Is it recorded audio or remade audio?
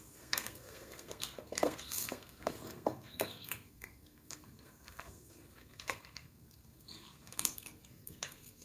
remade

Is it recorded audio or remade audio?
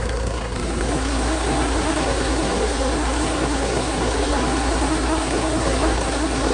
remade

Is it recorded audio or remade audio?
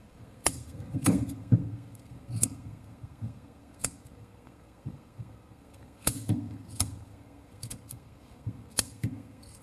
remade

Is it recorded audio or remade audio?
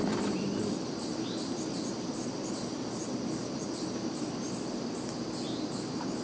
recorded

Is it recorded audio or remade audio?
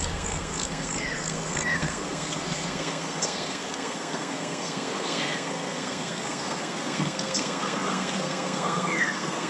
remade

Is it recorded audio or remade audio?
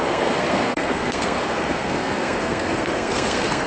remade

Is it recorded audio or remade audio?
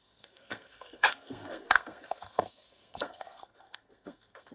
remade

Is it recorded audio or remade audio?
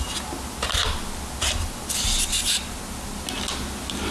recorded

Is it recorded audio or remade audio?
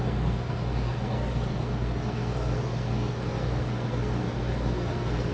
remade